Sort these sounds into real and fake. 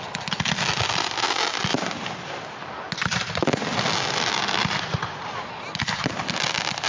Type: real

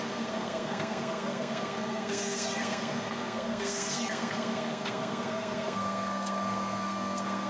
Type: fake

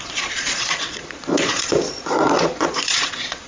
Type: fake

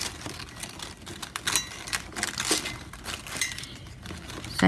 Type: real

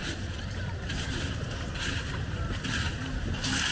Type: real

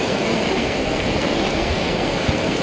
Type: fake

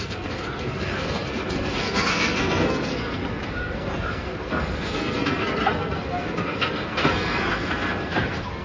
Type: fake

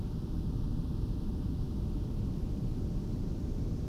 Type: real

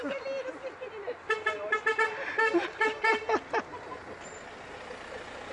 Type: real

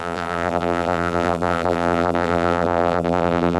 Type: fake